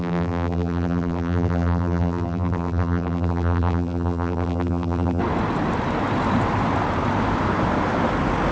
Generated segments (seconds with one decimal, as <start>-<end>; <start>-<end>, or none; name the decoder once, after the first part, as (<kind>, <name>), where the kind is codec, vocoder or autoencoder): 0.0-5.2 (vocoder, BigVGAN v2)